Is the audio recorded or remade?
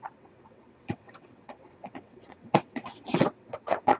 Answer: remade